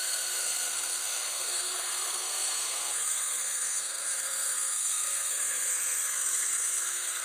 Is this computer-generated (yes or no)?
yes